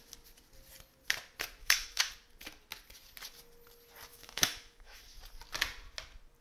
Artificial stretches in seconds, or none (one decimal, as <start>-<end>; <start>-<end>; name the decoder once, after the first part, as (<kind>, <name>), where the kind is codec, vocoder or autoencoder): 1.6-2.1 (autoencoder, DAC-VAE); 4.1-5.0